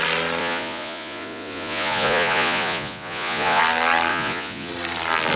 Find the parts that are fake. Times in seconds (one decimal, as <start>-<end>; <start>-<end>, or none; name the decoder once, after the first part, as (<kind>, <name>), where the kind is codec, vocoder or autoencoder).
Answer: 0.4-3.6 (vocoder, Vocos); 4.1-4.7